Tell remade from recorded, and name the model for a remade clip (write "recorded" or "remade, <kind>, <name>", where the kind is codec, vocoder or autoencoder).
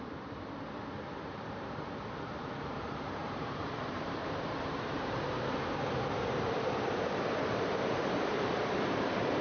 remade, vocoder, BigVGAN v2